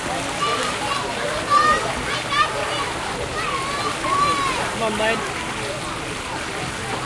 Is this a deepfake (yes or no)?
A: no